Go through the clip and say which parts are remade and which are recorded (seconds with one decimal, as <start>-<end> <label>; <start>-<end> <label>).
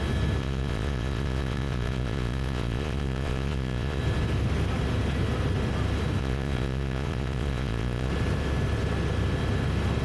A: 0.0-0.4 recorded; 0.4-4.0 remade; 4.0-6.2 recorded; 6.2-8.1 remade; 8.1-10.0 recorded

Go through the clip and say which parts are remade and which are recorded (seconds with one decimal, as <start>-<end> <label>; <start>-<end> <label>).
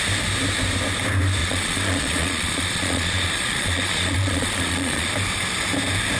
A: 0.0-1.4 recorded; 1.4-5.1 remade; 5.1-6.2 recorded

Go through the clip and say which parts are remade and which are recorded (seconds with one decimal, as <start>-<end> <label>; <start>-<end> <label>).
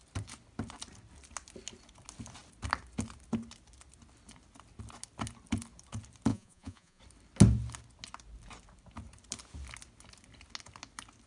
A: 0.0-6.3 recorded; 6.3-7.0 remade; 7.0-11.3 recorded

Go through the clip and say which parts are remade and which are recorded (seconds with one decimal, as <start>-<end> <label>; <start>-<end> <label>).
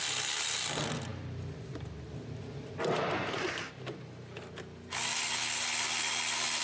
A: 0.0-6.6 recorded